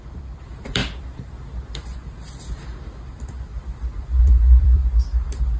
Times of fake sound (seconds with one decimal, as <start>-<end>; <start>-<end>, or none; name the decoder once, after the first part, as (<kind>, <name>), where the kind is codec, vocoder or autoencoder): 0.0-0.8 (vocoder, BigVGAN v2); 4.2-4.8